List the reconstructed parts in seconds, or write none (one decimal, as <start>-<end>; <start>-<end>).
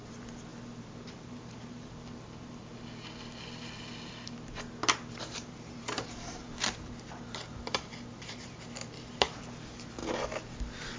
0.0-0.5; 1.1-2.6; 5.2-10.0